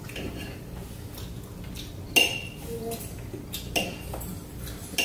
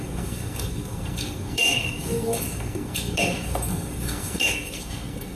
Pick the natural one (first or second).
first